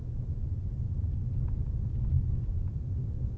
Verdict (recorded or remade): recorded